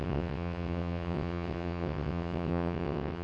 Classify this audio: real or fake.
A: fake